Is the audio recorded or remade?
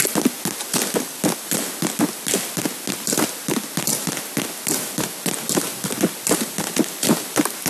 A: recorded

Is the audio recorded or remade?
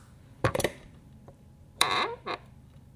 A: remade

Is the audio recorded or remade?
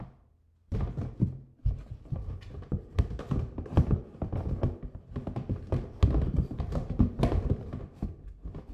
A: recorded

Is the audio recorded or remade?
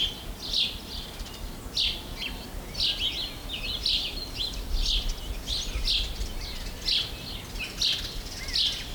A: recorded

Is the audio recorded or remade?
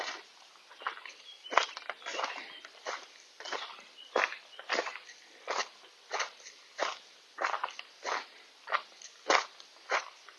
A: remade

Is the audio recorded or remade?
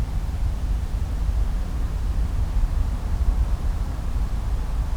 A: remade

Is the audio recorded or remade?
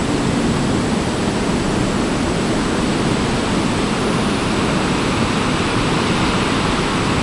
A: recorded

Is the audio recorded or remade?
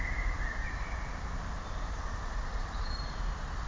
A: remade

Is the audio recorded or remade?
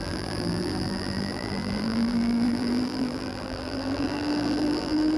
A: remade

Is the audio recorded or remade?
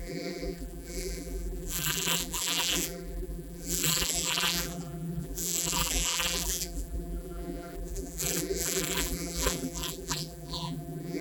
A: remade